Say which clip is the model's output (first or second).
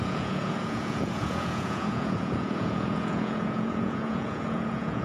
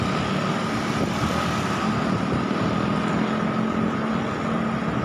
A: first